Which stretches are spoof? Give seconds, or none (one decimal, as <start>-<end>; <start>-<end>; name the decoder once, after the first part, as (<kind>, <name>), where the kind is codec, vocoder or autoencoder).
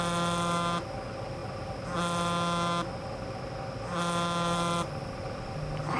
none